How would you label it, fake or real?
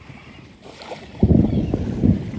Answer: fake